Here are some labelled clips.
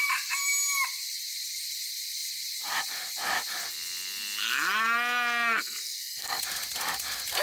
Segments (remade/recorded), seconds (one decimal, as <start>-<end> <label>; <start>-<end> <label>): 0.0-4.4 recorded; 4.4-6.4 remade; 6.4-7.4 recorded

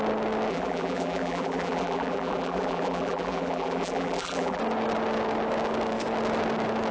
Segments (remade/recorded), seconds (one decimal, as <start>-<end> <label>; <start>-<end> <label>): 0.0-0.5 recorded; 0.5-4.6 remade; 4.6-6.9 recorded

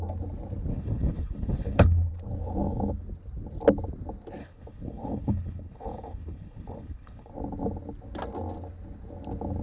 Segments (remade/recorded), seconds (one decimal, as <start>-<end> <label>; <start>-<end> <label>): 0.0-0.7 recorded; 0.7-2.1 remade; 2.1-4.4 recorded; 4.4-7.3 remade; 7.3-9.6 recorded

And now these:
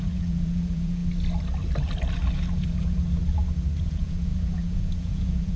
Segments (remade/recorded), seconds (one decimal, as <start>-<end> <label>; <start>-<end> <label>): 0.0-1.0 remade; 1.0-2.5 recorded; 2.5-3.2 remade; 3.2-3.9 recorded; 3.9-5.6 remade